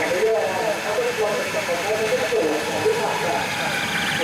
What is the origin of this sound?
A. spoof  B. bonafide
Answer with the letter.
A